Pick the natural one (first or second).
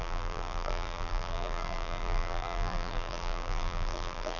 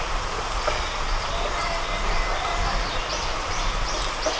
second